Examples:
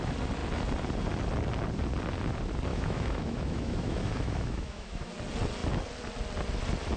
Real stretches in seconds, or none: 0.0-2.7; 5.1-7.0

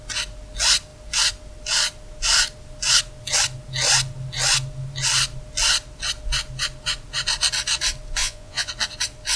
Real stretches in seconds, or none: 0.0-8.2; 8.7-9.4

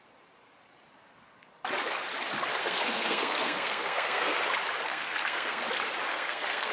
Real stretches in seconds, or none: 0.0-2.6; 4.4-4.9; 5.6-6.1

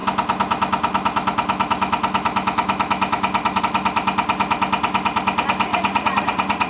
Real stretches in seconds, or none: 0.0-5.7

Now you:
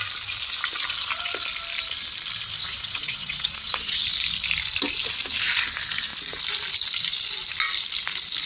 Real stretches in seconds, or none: 0.0-2.6; 4.0-8.5

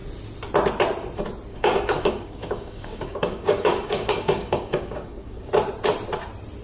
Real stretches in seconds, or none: 0.0-1.5; 5.5-6.6